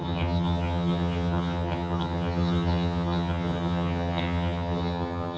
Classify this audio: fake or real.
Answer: fake